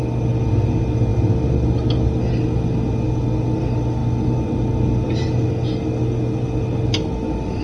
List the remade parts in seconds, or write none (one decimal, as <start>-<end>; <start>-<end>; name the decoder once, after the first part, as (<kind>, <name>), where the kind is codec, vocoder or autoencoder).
none